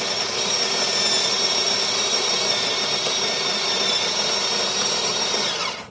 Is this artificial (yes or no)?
no